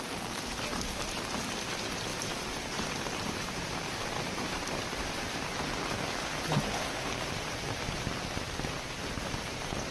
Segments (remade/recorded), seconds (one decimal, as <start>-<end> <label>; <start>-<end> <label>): 0.0-2.1 recorded; 2.1-5.4 remade; 5.4-9.9 recorded